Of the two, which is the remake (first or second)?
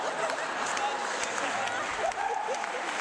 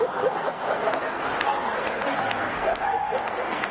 second